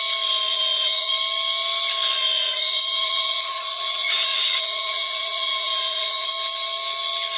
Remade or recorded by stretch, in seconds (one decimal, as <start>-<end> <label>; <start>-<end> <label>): 0.0-0.5 recorded; 0.5-1.1 remade; 1.1-2.1 recorded; 2.1-6.3 remade; 6.3-7.4 recorded

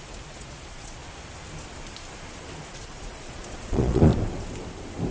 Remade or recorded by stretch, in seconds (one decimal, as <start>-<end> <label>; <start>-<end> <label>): 0.0-1.0 remade; 1.0-2.7 recorded; 2.7-4.1 remade; 4.1-5.1 recorded

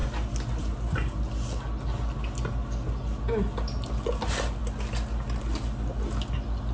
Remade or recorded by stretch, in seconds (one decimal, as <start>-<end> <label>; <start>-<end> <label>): 0.0-6.7 recorded

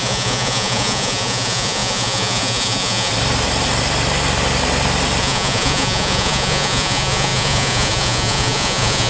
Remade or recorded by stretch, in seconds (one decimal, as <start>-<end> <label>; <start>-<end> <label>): 0.0-3.1 remade; 3.1-5.2 recorded; 5.2-9.1 remade

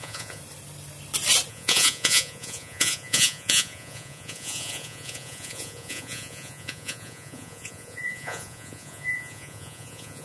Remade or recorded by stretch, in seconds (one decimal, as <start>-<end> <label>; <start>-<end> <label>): 0.0-0.4 remade; 0.4-1.5 recorded; 1.5-10.2 remade

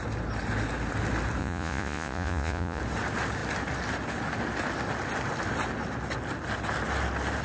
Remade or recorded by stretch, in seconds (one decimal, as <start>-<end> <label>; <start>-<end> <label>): 0.0-1.4 recorded; 1.4-2.8 remade; 2.8-7.4 recorded

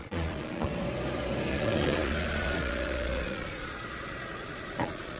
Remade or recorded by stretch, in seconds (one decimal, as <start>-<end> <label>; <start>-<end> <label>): 0.0-0.7 remade; 0.7-1.5 recorded; 1.5-5.2 remade

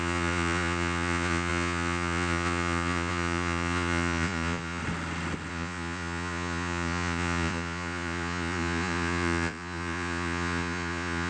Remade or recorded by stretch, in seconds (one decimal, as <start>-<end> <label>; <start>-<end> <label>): 0.0-4.8 remade; 4.8-5.5 recorded; 5.5-11.3 remade